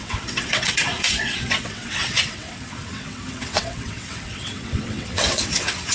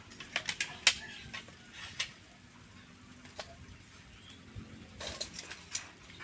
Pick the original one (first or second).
second